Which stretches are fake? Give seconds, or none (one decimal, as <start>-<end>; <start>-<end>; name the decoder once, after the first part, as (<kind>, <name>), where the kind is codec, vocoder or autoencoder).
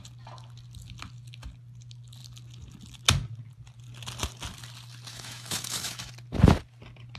5.1-6.1 (autoencoder, DAC-VAE)